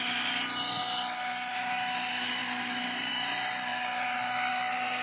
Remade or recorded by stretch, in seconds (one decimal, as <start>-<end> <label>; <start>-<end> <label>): 0.0-5.0 recorded